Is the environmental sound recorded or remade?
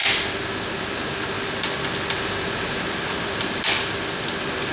recorded